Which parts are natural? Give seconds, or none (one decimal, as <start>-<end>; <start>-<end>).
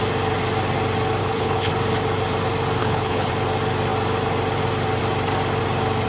0.0-1.2; 1.7-2.8; 3.3-6.1